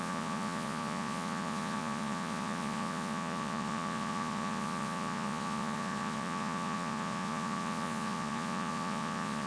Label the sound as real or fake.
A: fake